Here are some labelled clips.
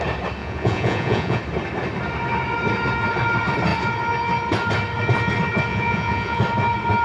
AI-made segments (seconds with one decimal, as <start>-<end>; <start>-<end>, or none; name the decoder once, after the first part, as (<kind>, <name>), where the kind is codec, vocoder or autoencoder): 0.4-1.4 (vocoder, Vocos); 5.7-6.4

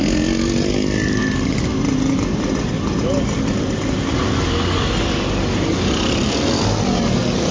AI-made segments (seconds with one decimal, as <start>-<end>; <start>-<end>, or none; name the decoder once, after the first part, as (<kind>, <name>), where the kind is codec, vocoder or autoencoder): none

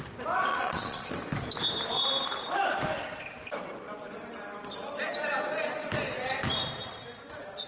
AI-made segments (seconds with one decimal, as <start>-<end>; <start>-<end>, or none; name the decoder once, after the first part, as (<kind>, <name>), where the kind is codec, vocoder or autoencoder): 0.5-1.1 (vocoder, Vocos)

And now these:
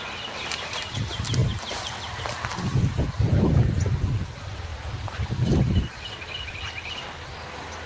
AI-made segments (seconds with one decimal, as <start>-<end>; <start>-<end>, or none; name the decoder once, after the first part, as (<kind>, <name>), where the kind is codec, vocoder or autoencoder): none